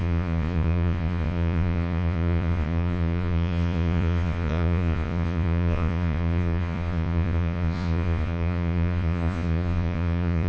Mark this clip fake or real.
fake